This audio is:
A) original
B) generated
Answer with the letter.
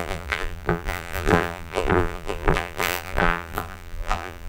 B